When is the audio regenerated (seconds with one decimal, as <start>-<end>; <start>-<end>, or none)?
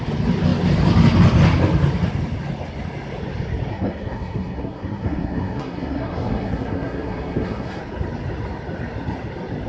3.7-7.8